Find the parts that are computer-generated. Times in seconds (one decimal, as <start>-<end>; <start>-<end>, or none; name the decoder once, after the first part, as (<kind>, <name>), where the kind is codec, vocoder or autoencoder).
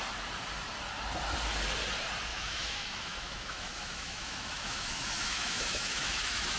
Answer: 2.3-6.6 (autoencoder, DAC-VAE)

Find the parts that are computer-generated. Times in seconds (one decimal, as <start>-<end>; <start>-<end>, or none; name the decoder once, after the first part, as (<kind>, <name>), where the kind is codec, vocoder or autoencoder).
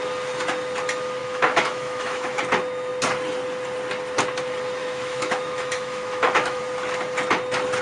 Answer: 1.2-2.4 (autoencoder, DAC-VAE); 4.8-6.6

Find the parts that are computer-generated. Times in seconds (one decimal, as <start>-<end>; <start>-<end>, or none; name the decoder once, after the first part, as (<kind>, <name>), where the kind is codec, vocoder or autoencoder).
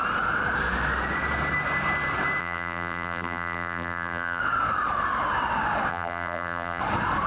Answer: 2.4-4.4 (vocoder, BigVGAN v2); 5.9-6.8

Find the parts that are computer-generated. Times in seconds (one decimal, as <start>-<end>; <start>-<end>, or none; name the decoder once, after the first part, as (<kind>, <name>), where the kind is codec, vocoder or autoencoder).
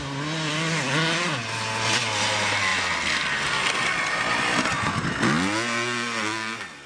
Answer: none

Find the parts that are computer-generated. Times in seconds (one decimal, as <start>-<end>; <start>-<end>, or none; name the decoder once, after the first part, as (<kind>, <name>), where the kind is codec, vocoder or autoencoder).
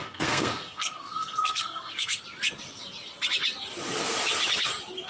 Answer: 0.0-2.2 (codec, SNAC)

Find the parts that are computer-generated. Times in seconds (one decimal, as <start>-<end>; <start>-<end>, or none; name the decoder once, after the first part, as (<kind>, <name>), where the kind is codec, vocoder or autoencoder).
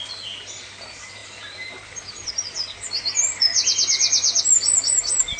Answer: none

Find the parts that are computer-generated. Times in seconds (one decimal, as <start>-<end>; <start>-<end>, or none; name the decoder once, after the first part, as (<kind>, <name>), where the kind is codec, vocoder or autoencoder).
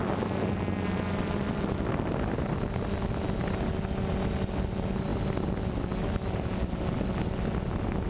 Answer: none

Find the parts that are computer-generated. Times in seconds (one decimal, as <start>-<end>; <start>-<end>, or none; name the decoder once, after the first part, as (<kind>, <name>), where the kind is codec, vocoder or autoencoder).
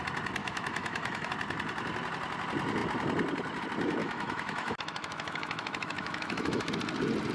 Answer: 0.4-1.3 (autoencoder, DAC-VAE); 4.0-6.7